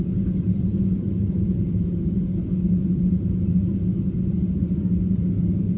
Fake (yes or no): no